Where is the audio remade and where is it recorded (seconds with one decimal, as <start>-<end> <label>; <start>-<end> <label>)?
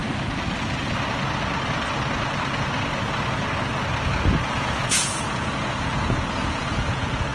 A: 0.0-4.4 recorded; 4.4-7.3 remade